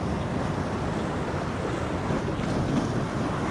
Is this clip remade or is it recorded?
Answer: recorded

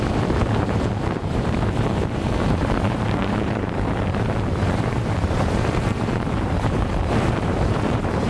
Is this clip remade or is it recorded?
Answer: remade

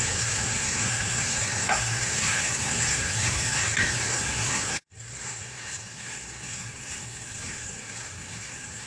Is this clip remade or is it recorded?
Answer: remade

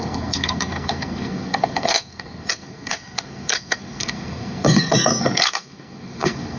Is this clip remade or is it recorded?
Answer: remade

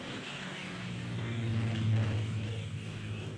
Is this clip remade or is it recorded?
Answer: remade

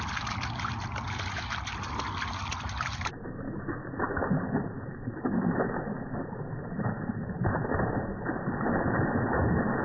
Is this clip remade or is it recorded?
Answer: recorded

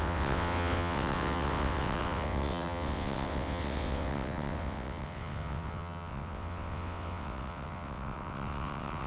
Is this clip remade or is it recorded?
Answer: remade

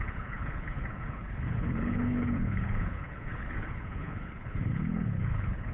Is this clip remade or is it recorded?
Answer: remade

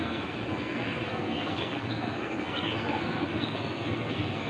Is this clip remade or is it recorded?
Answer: remade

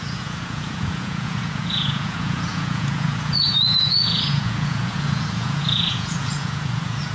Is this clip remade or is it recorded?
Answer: remade